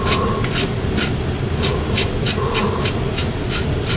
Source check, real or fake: real